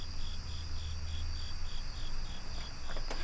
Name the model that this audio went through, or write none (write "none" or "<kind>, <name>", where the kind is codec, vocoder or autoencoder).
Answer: none